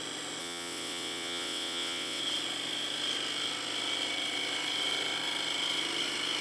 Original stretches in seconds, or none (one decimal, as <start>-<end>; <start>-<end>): 0.0-0.4; 2.2-6.4